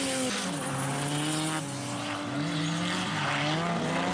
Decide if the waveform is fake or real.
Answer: real